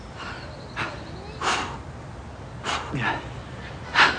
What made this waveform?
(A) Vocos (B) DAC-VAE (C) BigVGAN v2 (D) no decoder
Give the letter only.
D